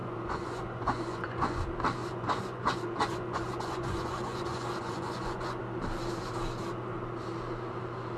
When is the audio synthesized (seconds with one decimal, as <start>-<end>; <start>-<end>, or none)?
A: 0.0-1.6; 2.0-5.6